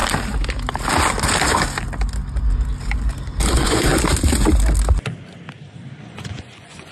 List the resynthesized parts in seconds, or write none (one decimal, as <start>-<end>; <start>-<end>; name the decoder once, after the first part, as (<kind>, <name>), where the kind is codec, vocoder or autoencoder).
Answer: 3.5-3.9 (vocoder, Vocos); 6.0-6.9